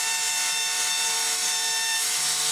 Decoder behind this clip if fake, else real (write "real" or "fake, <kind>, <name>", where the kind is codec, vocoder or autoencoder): real